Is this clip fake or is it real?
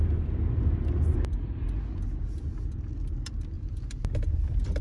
real